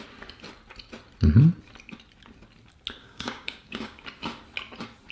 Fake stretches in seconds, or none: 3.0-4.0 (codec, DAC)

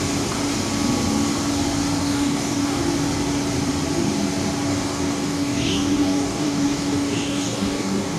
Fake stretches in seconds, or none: 2.0-2.8 (codec, DAC); 4.7-8.2

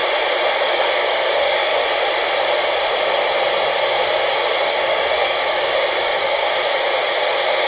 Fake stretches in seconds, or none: 0.6-1.7 (codec, DAC); 4.7-6.4

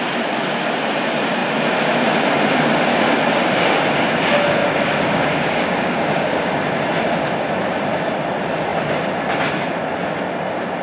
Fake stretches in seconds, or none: 4.6-6.6 (codec, DAC)

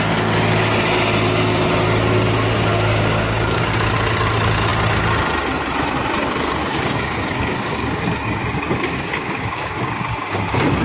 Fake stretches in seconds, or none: 2.7-3.6 (codec, DAC); 6.6-10.8

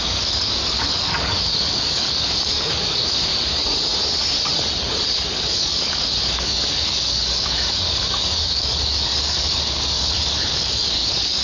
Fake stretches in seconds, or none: 0.0-3.3 (codec, DAC); 5.3-11.4

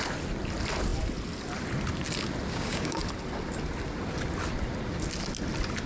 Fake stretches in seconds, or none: 2.5-3.0 (codec, DAC)